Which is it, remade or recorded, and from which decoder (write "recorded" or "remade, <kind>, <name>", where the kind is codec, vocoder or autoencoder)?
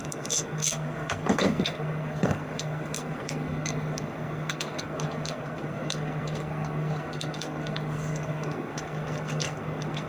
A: remade, codec, SNAC